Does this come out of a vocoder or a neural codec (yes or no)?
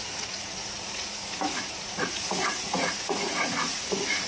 yes